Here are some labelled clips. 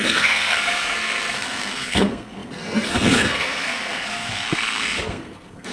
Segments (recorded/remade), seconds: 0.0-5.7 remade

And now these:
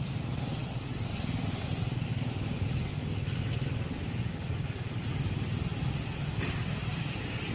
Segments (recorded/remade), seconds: 0.0-7.5 recorded